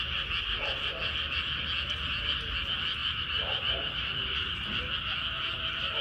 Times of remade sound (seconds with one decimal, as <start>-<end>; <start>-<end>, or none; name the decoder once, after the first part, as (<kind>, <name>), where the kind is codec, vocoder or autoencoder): 3.0-4.8 (vocoder, BigVGAN v2)